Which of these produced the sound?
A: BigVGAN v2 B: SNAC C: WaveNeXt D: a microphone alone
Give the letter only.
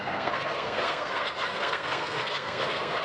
B